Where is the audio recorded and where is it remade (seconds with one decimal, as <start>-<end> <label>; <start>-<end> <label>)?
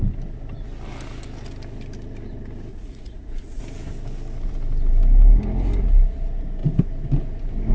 0.0-2.7 recorded; 2.7-3.6 remade; 3.6-7.7 recorded